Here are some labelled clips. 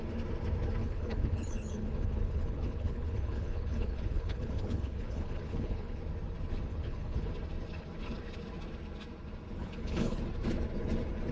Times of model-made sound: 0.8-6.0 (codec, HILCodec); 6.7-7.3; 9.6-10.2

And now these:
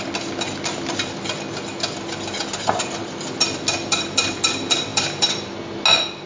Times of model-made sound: none

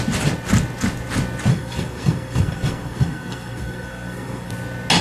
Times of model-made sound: 1.5-4.5 (codec, SNAC)

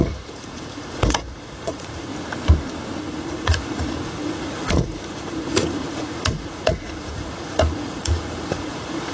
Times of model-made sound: 0.0-2.1 (vocoder, Vocos); 3.0-9.1

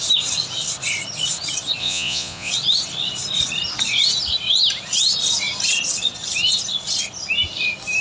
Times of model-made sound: 1.8-2.5 (vocoder, Vocos)

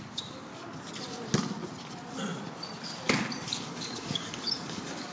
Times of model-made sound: 0.0-0.5 (codec, DAC); 3.6-5.1